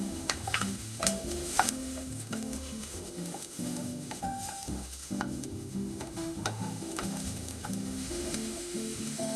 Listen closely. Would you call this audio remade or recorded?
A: remade